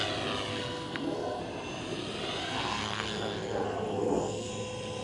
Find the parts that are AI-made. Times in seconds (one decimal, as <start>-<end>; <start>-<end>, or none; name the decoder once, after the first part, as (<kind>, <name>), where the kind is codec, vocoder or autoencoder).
0.5-1.4 (codec, SNAC); 2.4-4.5